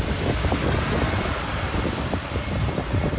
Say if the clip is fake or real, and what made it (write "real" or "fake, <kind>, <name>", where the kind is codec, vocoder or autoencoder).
fake, vocoder, BigVGAN v2